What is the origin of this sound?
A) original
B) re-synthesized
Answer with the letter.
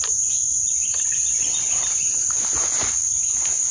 A